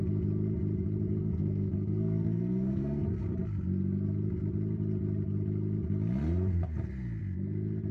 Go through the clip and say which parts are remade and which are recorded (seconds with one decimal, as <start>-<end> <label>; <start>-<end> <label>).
0.0-1.2 recorded; 1.2-3.0 remade; 3.0-7.9 recorded